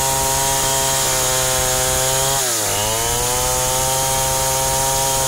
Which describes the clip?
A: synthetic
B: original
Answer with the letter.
B